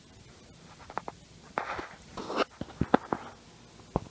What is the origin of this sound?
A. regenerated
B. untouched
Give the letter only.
B